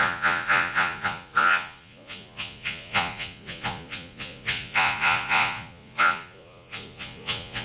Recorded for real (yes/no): no